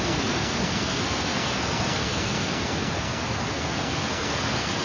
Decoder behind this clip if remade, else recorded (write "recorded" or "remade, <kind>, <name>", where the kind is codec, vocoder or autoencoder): remade, codec, SNAC